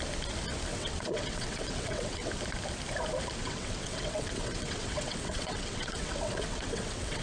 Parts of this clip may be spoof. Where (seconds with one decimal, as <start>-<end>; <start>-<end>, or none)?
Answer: 0.7-2.3; 3.4-7.2